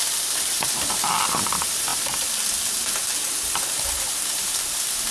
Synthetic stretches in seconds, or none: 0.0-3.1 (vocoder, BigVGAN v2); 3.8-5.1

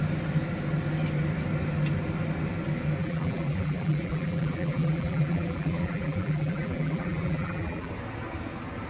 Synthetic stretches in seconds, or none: 3.0-7.9 (vocoder, BigVGAN v2)

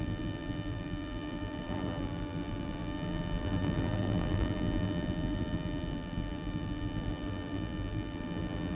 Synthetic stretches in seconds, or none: 0.0-8.8 (vocoder, BigVGAN v2)

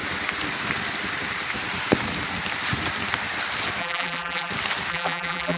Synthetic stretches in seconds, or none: 3.8-4.5 (vocoder, BigVGAN v2); 4.9-5.6

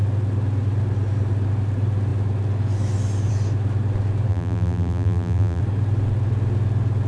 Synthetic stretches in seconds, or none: 4.3-5.6 (vocoder, BigVGAN v2)

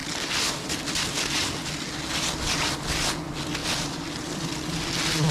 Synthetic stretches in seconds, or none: 0.0-1.1 (vocoder, BigVGAN v2); 3.6-4.5

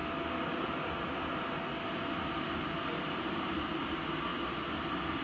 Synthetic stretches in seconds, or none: none